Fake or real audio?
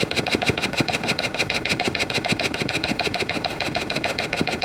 fake